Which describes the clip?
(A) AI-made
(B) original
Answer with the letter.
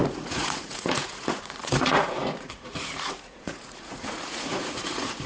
A